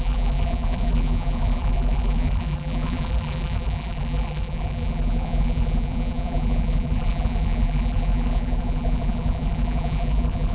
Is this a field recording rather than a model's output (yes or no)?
no